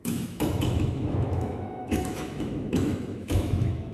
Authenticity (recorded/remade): remade